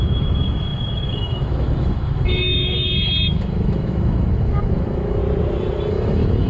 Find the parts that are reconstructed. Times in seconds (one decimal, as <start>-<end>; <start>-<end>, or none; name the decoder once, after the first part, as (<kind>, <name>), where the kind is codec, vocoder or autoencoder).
0.0-5.2 (autoencoder, DAC-VAE); 5.9-6.5

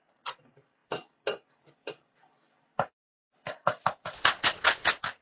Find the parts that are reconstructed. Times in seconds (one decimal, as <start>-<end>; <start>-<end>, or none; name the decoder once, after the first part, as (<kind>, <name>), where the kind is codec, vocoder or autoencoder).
none

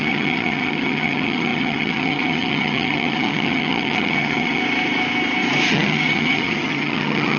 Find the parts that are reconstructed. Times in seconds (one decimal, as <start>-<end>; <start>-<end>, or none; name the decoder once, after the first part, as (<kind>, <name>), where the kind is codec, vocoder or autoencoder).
0.0-4.6 (vocoder, HiFi-GAN); 5.7-7.4

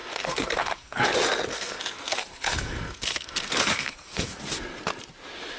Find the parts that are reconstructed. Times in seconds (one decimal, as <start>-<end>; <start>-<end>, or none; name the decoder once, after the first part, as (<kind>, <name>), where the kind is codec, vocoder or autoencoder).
0.0-1.0 (codec, SNAC); 1.5-4.4

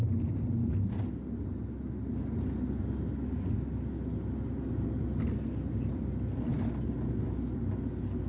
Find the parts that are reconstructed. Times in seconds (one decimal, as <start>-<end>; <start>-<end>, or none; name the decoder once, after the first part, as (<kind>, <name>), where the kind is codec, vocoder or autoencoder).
none

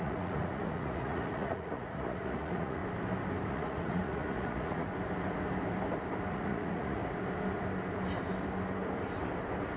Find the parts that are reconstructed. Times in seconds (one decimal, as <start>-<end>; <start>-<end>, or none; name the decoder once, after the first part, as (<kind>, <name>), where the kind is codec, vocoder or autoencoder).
0.0-2.8 (vocoder, Vocos); 3.5-4.9; 6.3-7.0